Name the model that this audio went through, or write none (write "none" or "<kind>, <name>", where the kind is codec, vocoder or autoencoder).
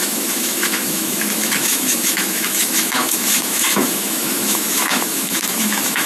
autoencoder, DAC-VAE